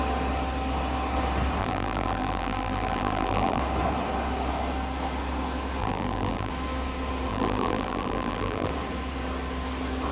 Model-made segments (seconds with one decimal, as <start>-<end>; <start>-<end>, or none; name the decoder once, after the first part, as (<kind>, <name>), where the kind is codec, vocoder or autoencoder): 1.6-3.6 (vocoder, BigVGAN v2); 5.8-6.5; 7.3-8.7